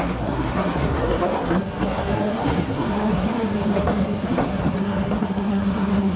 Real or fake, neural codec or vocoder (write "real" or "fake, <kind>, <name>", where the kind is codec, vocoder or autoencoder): fake, codec, SNAC